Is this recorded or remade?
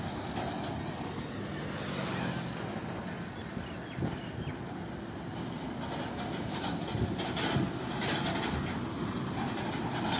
recorded